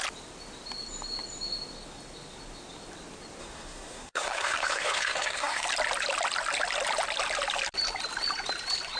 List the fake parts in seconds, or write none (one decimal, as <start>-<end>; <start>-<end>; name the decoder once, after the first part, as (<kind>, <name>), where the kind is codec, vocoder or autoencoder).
3.4-5.7 (codec, SNAC)